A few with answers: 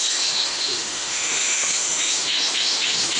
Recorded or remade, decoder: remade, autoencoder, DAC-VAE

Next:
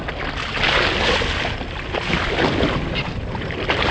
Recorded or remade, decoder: recorded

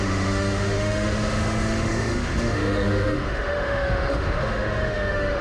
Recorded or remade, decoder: remade, autoencoder, DAC-VAE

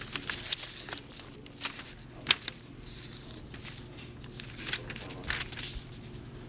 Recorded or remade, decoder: recorded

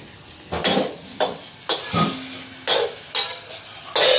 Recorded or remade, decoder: recorded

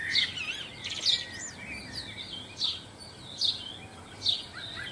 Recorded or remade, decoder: recorded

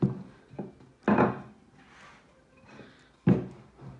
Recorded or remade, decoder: recorded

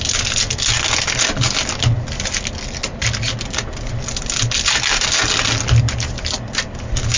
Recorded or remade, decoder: recorded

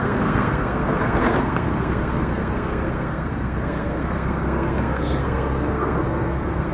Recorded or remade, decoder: remade, codec, SNAC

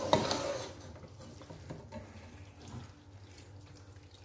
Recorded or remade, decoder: recorded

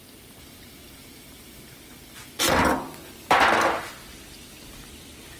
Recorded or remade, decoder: recorded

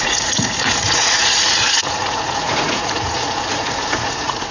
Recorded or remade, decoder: remade, vocoder, Vocos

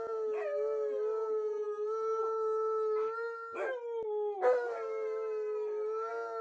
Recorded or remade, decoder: recorded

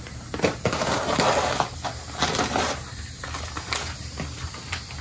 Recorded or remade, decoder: remade, vocoder, BigVGAN v2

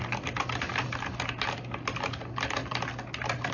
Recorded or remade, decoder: recorded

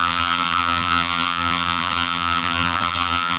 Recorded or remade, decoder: remade, vocoder, BigVGAN v2